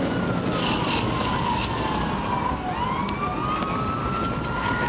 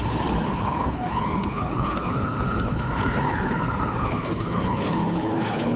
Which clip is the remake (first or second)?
second